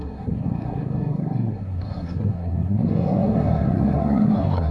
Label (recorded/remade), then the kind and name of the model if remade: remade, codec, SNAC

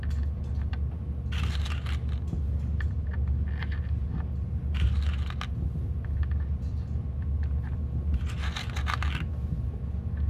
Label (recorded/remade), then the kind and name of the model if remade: recorded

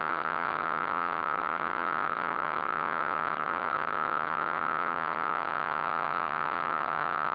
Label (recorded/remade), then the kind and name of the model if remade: remade, vocoder, HiFi-GAN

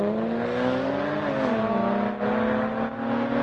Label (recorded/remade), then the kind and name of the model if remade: recorded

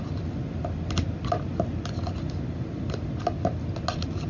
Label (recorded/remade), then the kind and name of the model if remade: recorded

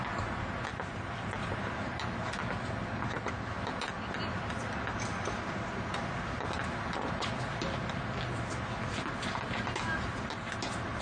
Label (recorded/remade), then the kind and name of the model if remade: recorded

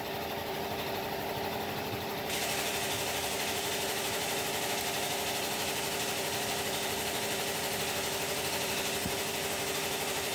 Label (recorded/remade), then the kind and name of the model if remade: remade, vocoder, BigVGAN v2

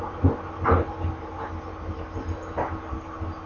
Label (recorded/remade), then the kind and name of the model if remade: recorded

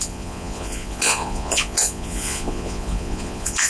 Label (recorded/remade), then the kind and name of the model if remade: remade, vocoder, Vocos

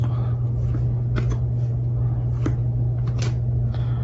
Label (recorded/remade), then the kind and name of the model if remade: recorded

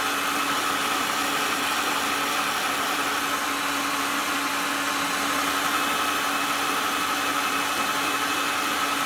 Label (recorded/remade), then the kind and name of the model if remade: recorded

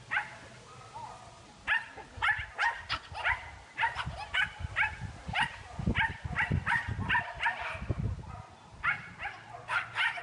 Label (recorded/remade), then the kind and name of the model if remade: recorded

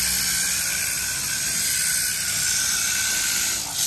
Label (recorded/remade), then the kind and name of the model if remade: recorded